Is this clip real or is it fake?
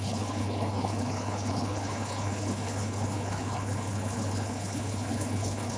fake